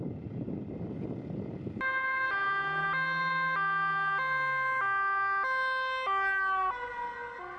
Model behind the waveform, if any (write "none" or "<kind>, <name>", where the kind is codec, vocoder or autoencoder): none